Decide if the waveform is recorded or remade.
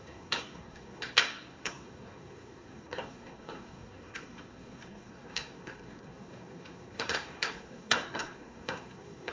remade